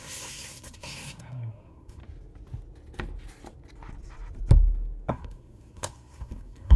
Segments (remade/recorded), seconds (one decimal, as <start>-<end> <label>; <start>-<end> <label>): 0.0-2.0 remade; 2.0-5.1 recorded; 5.1-6.8 remade